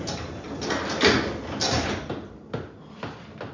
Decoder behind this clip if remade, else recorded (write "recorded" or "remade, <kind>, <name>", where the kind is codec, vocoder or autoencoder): recorded